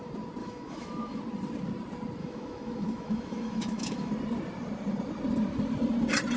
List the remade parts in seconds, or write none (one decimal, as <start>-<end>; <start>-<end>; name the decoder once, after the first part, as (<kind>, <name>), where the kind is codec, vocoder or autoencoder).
0.4-1.2 (autoencoder, DAC-VAE); 2.2-4.1